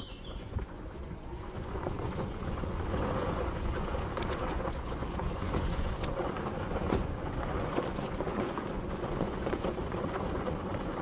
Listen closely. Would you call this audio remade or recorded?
remade